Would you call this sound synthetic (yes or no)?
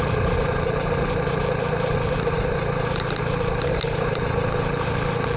yes